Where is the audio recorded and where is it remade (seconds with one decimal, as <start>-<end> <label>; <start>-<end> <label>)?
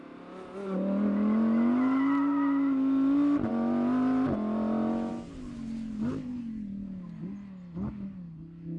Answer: 0.0-8.8 recorded